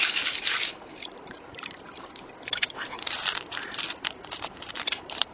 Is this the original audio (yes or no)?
no